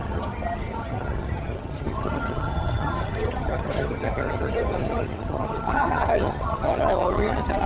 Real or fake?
fake